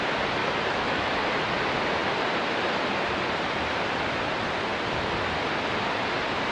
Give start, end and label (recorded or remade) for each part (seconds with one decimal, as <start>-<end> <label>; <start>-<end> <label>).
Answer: 0.0-0.4 recorded; 0.4-1.1 remade; 1.1-6.5 recorded